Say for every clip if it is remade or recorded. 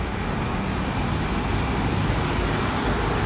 recorded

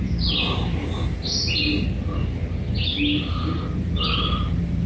recorded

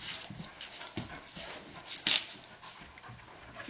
recorded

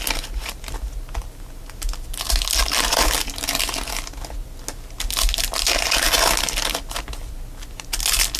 recorded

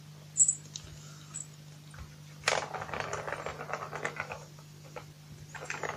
recorded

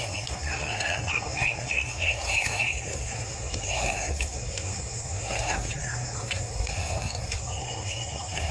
remade